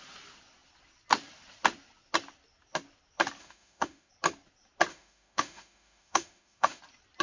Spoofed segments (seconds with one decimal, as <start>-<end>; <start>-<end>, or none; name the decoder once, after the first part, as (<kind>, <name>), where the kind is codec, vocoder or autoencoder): 3.4-4.1 (autoencoder, DAC-VAE); 4.9-6.8